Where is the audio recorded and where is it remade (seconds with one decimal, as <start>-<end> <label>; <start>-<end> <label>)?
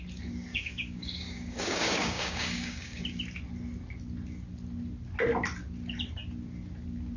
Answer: 0.0-0.5 recorded; 0.5-3.0 remade; 3.0-7.2 recorded